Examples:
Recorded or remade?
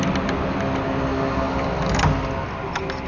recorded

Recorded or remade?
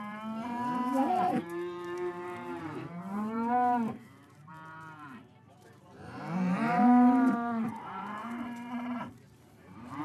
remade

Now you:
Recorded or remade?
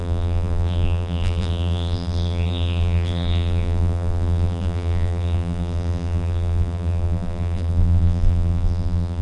remade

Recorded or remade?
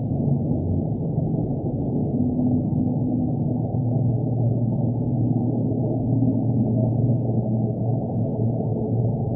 remade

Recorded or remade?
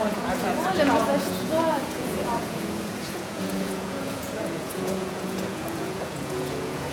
remade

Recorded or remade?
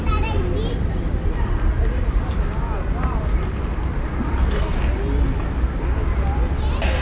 recorded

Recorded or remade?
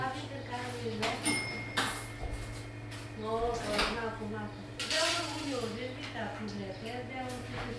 recorded